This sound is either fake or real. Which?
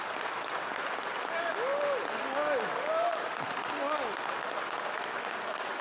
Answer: real